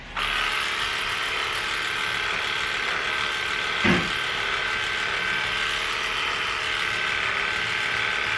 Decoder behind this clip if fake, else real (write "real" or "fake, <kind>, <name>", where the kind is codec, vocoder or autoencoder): real